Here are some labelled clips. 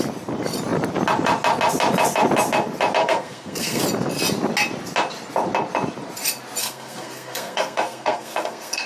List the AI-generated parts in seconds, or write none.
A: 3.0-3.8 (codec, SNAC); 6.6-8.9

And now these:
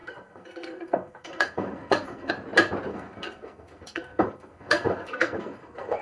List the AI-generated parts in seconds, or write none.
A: 0.0-2.3 (codec, SNAC); 2.9-6.0

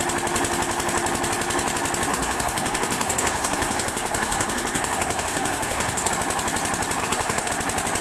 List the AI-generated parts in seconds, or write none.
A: 2.1-6.1 (codec, SNAC); 7.0-7.5

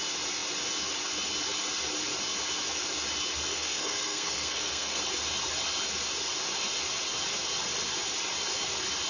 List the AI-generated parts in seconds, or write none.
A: 3.5-5.0 (codec, SNAC)

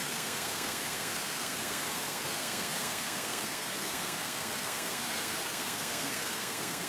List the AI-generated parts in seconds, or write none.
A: 0.0-6.9 (codec, SNAC)